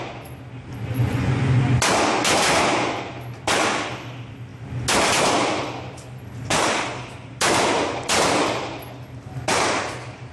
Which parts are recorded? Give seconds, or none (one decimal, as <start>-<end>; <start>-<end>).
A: 0.0-1.0; 1.6-10.3